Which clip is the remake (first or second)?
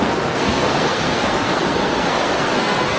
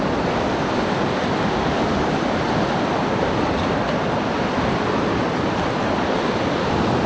first